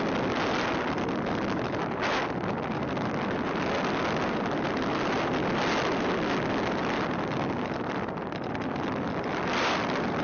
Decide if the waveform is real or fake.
real